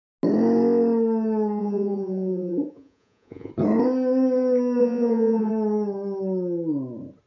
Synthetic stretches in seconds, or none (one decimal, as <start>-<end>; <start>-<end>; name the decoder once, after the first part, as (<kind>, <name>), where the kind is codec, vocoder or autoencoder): 1.6-3.5 (vocoder, Vocos); 4.8-5.5